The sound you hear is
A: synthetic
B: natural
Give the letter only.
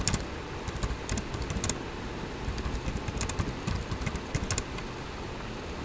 B